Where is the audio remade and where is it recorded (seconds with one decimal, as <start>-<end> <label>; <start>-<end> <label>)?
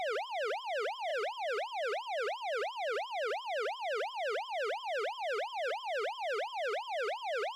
0.0-7.6 recorded